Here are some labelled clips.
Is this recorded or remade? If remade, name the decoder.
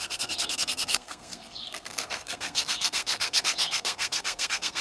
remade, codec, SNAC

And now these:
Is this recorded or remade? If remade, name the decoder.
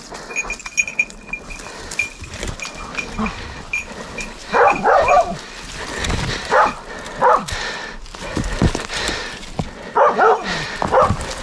recorded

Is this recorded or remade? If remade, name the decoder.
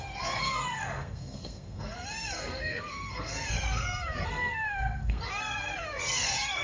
remade, codec, SNAC